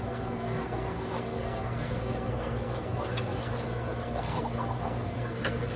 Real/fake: fake